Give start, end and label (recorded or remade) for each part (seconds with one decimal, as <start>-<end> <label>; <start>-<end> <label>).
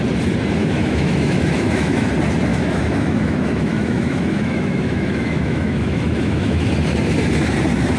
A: 0.0-0.6 recorded; 0.6-2.1 remade; 2.1-2.5 recorded; 2.5-6.7 remade; 6.7-8.0 recorded